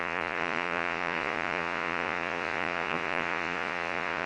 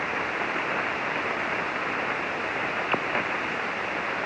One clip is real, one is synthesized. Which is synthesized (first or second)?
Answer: first